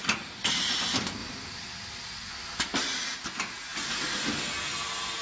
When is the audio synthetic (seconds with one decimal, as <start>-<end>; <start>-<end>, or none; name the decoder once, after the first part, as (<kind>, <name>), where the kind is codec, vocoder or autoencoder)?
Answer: none